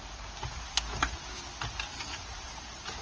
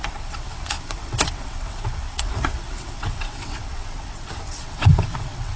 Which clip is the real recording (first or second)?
first